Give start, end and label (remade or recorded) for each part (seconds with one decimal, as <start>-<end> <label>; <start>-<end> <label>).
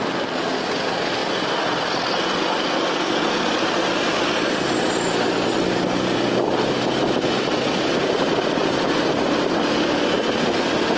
0.0-11.0 recorded